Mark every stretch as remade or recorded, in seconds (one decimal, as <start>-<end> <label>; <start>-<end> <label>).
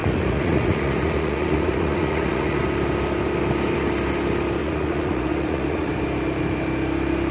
0.0-2.6 remade; 2.6-4.6 recorded; 4.6-5.9 remade; 5.9-7.3 recorded